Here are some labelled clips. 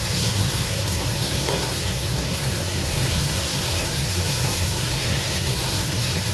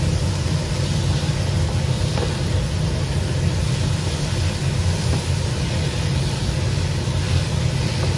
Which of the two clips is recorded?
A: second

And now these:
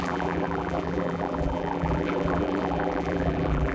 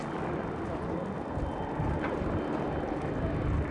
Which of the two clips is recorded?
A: second